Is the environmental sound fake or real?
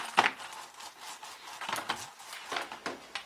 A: real